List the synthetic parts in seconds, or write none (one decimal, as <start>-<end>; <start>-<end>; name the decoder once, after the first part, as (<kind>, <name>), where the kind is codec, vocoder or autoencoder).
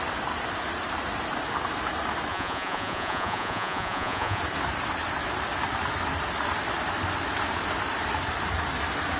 2.3-4.4 (vocoder, Vocos)